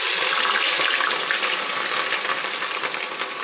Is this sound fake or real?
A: real